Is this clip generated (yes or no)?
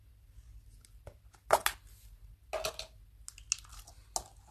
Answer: no